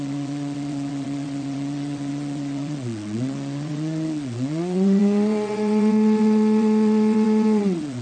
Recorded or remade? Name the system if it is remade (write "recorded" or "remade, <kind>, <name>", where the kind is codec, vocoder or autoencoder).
remade, vocoder, WaveNeXt